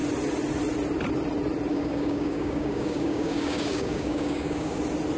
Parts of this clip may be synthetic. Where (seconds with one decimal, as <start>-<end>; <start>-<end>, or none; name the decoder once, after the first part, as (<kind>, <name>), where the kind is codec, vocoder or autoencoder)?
1.7-4.8 (codec, DAC)